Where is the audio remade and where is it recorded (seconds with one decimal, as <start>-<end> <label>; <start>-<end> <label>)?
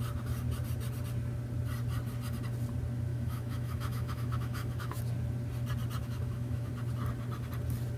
0.0-3.1 recorded; 3.1-5.0 remade; 5.0-6.0 recorded; 6.0-6.7 remade; 6.7-8.0 recorded